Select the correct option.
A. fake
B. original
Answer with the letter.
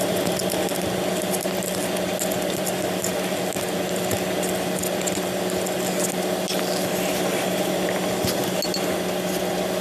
B